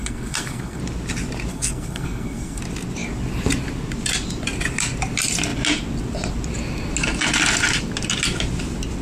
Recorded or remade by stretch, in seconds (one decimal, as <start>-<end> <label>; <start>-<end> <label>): 0.0-0.8 remade; 0.8-1.5 recorded; 1.5-2.6 remade; 2.6-9.0 recorded

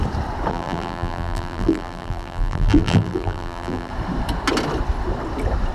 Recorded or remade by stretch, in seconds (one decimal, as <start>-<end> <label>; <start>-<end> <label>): 0.0-0.5 recorded; 0.5-3.9 remade; 3.9-5.7 recorded

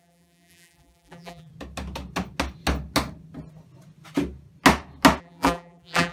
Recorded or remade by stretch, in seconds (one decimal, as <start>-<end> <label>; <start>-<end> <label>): 0.0-1.5 remade; 1.5-5.2 recorded; 5.2-6.1 remade

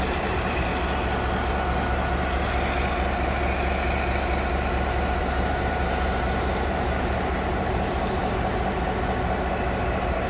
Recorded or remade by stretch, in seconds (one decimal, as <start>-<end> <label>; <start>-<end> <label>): 0.0-0.7 remade; 0.7-5.2 recorded; 5.2-8.2 remade; 8.2-9.9 recorded; 9.9-10.3 remade

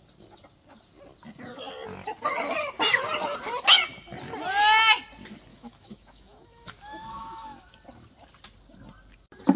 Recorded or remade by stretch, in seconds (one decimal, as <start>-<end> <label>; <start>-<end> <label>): 0.0-5.5 recorded; 5.5-7.7 remade; 7.7-9.6 recorded

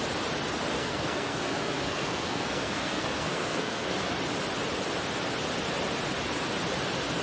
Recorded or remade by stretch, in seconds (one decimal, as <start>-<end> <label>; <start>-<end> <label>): 0.0-0.7 recorded; 0.7-4.1 remade; 4.1-7.2 recorded

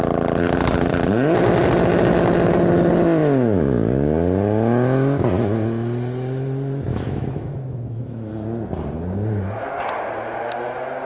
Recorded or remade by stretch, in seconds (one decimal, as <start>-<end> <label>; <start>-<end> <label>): 0.0-3.2 recorded; 3.2-3.9 remade; 3.9-6.9 recorded; 6.9-8.3 remade; 8.3-11.1 recorded